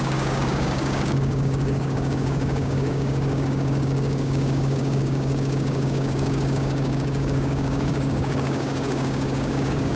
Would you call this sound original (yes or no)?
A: no